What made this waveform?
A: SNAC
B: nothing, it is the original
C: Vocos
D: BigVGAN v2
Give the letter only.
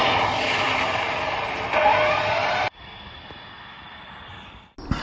B